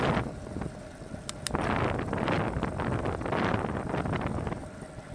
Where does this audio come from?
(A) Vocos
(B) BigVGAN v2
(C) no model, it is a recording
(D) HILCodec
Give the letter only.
C